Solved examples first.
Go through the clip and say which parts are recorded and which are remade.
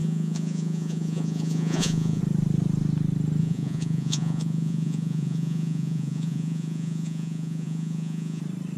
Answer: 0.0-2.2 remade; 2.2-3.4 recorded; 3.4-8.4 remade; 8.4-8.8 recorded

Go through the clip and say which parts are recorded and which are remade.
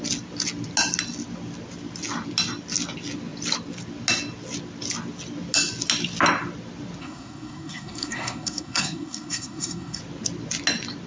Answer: 0.0-7.0 recorded; 7.0-10.0 remade; 10.0-11.1 recorded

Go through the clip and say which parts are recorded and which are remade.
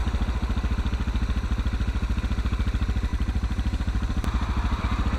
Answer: 0.0-3.1 recorded; 3.1-4.8 remade; 4.8-5.2 recorded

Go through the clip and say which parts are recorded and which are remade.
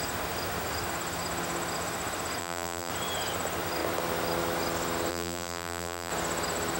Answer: 0.0-2.4 recorded; 2.4-2.9 remade; 2.9-5.1 recorded; 5.1-6.1 remade; 6.1-6.8 recorded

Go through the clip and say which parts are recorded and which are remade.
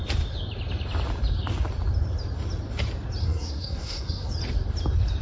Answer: 0.0-3.2 recorded; 3.2-4.3 remade; 4.3-5.2 recorded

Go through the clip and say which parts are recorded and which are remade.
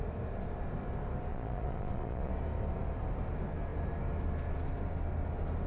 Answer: 0.0-1.3 recorded; 1.3-2.3 remade; 2.3-5.7 recorded